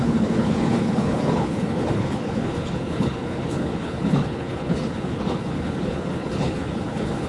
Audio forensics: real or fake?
fake